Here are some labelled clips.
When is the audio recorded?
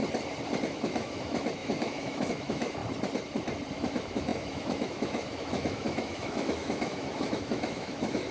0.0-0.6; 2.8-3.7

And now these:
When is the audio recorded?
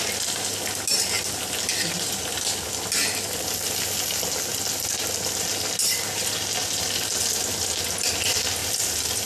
0.0-9.3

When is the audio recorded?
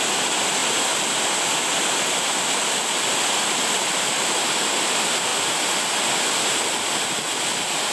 0.0-7.9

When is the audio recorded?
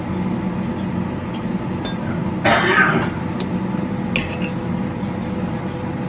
0.0-6.1